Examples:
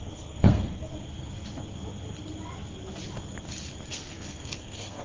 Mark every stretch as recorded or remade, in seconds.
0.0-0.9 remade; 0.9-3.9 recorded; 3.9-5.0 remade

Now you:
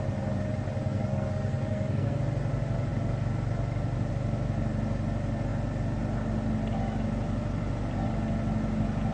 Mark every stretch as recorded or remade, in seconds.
0.0-0.8 recorded; 0.8-2.2 remade; 2.2-9.1 recorded